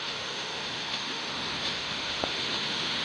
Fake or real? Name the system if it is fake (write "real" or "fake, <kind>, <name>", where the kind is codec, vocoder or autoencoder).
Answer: fake, autoencoder, DAC-VAE